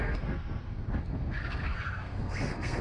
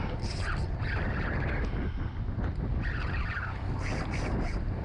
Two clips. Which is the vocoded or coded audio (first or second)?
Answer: first